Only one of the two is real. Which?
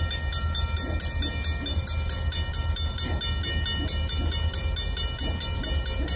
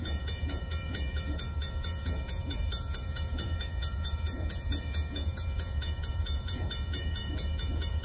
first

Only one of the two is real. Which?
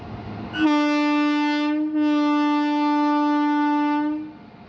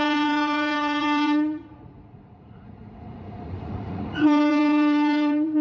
first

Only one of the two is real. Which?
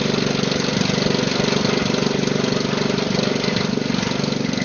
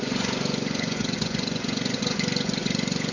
first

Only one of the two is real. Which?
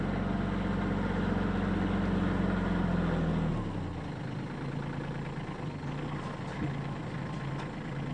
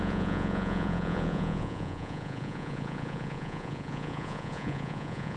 first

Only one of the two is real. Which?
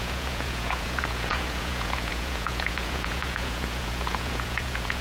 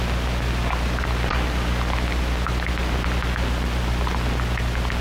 second